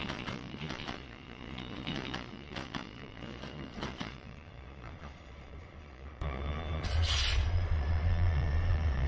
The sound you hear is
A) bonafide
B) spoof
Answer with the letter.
B